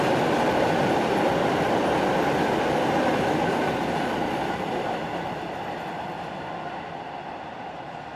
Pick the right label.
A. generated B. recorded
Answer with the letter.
B